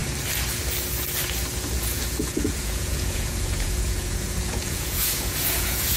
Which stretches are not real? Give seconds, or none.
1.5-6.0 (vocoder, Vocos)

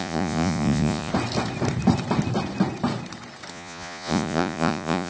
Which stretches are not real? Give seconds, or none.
0.0-1.1 (vocoder, Vocos); 3.5-5.1

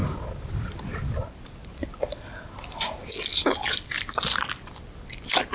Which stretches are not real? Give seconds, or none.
0.0-0.6 (vocoder, BigVGAN v2); 1.6-2.7

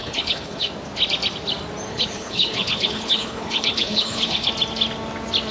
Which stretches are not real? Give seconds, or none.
0.0-0.7 (codec, HILCodec); 1.9-4.5

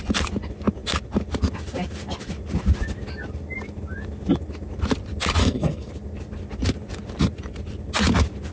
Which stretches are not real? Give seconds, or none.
5.4-5.9 (codec, SNAC)